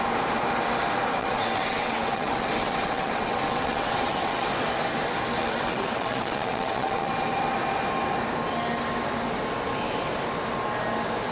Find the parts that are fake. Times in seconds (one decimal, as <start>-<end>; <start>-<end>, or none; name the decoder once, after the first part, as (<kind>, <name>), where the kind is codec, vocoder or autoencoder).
1.2-4.5 (vocoder, WaveNeXt); 5.4-7.1